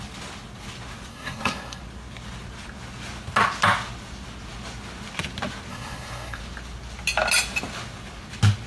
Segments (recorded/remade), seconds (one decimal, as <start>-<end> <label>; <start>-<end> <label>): 0.0-1.1 recorded; 1.1-1.8 remade; 1.8-5.7 recorded; 5.7-6.4 remade; 6.4-8.7 recorded